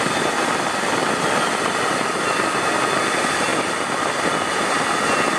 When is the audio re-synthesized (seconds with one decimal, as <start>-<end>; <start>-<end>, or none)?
1.0-1.8; 3.5-4.2